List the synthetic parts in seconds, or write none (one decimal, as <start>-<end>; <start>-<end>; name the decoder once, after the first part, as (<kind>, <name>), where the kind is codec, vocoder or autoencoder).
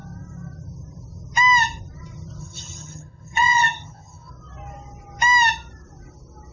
2.4-4.3 (vocoder, HiFi-GAN)